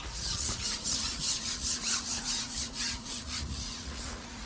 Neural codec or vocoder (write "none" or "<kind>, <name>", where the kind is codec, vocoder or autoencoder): vocoder, Vocos